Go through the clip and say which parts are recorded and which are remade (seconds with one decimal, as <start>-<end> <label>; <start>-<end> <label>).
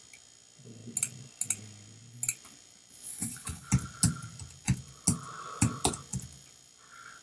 0.0-3.1 recorded; 3.1-3.7 remade; 3.7-7.2 recorded